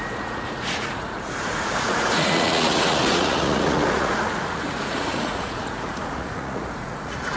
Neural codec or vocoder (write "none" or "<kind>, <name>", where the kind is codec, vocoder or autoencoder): vocoder, Vocos